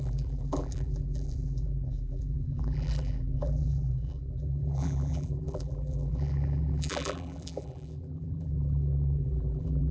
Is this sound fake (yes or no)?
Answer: yes